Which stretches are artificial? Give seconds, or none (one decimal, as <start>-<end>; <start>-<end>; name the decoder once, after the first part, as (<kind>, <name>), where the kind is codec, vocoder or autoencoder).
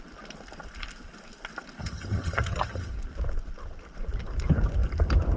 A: 1.8-2.9 (vocoder, HiFi-GAN)